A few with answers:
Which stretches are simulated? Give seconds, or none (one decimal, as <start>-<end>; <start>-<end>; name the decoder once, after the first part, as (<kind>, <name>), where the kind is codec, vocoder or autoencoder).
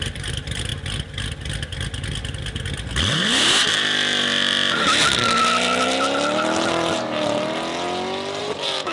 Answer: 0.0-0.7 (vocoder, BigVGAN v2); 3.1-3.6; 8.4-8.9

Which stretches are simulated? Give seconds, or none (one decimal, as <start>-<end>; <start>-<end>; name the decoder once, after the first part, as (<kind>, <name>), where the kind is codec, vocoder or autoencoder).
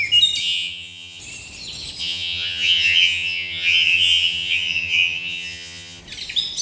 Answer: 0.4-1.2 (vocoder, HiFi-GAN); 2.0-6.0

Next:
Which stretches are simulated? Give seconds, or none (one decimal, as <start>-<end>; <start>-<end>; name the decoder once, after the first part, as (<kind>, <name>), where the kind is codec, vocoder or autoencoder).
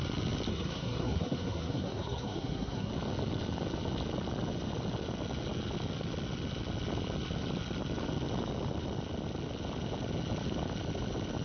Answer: 0.5-2.9 (codec, SNAC)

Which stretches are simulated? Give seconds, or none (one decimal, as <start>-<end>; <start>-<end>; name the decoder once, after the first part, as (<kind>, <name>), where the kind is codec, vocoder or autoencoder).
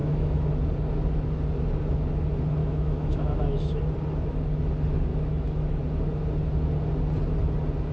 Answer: 0.0-0.5 (autoencoder, DAC-VAE); 2.6-3.8; 5.1-5.8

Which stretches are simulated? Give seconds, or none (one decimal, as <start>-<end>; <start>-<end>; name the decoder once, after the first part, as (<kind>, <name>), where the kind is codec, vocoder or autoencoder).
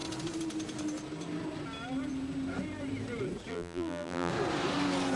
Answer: 3.5-4.3 (vocoder, BigVGAN v2)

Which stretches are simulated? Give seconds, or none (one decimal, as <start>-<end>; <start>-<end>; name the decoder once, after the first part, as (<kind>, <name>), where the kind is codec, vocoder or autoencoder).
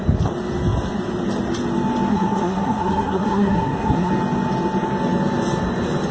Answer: 2.1-4.1 (codec, SNAC)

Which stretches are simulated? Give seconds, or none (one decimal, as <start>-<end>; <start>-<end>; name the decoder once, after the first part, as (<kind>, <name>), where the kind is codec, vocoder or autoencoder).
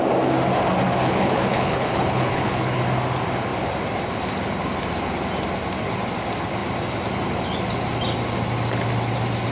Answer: 1.0-2.8 (codec, HILCodec)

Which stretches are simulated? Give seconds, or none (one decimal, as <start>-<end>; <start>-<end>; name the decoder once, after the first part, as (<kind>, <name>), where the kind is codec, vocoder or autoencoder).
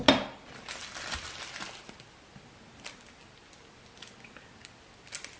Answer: 0.8-1.4 (vocoder, BigVGAN v2)